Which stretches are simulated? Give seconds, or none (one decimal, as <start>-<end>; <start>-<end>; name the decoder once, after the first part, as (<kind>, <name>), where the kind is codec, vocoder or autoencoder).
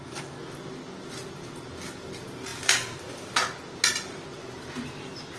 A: none